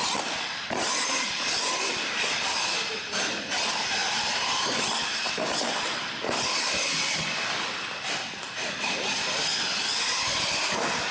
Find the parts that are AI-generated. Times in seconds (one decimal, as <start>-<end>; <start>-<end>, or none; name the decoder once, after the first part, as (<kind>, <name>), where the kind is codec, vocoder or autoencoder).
none